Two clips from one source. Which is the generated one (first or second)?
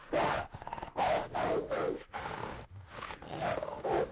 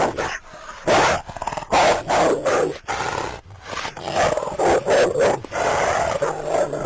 first